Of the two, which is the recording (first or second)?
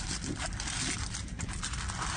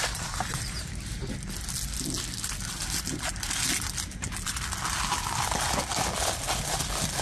second